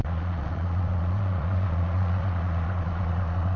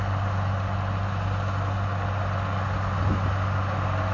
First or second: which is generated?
first